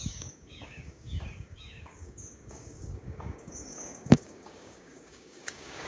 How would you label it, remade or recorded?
remade